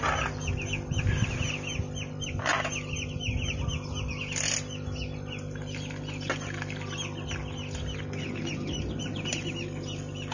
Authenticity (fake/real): real